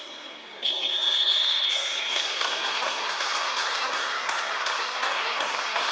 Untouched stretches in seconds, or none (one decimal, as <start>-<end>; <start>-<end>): none